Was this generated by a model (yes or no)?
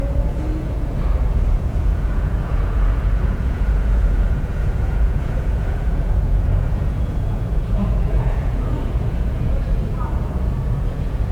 yes